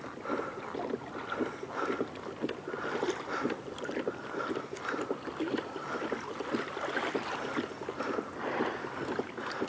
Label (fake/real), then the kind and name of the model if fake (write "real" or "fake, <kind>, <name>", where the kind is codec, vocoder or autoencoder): real